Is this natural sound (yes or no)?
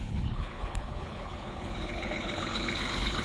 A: no